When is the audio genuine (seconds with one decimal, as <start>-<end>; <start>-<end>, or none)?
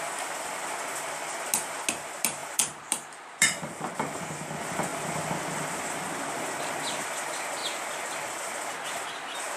0.0-2.4; 3.7-9.6